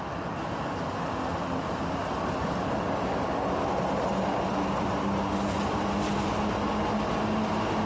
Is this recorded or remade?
recorded